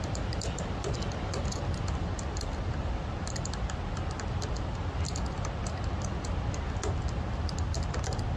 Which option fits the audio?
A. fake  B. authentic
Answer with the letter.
B